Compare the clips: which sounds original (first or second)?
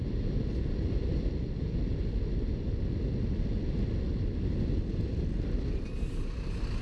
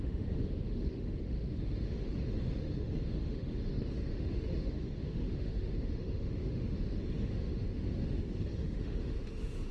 first